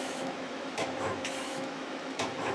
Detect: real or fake fake